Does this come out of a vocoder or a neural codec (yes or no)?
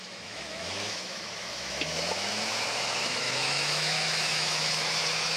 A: yes